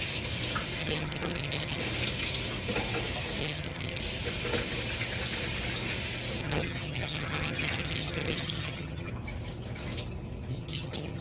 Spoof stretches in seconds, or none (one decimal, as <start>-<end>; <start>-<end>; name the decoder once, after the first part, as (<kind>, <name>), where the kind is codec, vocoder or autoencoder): 0.8-1.8 (vocoder, HiFi-GAN); 3.4-4.0; 6.4-9.1; 10.5-11.2